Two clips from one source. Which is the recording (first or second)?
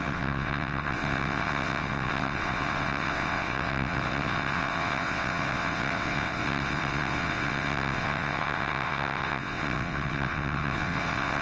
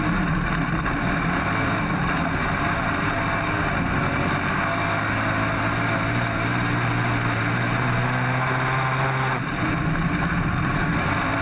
second